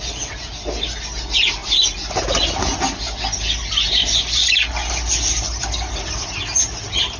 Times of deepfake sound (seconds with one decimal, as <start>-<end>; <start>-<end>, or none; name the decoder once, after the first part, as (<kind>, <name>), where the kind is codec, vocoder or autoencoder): none